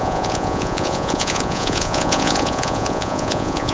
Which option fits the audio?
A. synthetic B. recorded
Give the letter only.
A